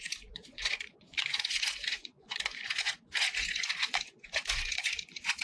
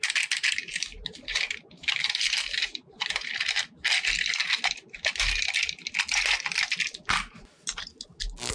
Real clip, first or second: second